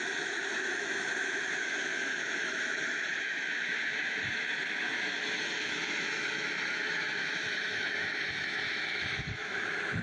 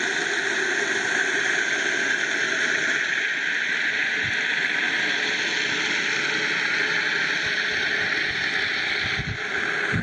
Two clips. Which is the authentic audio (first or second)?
second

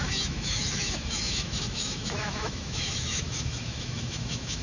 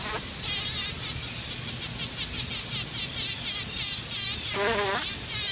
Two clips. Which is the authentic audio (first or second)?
second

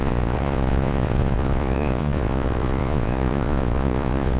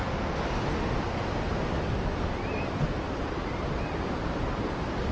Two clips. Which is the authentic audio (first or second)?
second